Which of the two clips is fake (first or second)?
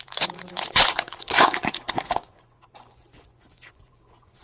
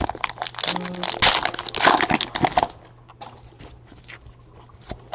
first